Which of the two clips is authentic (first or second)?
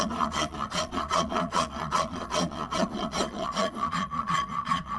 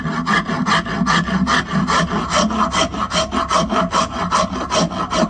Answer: second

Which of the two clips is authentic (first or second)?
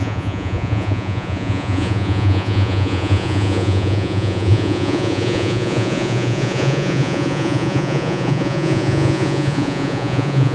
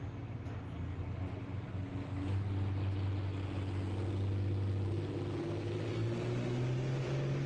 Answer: second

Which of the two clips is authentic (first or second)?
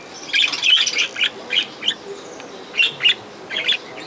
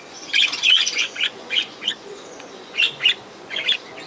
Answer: first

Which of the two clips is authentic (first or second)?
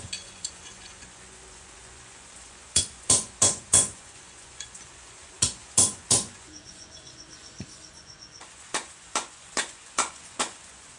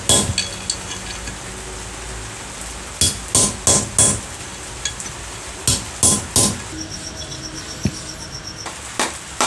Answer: second